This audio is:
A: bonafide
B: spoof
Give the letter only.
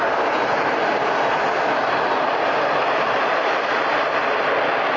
A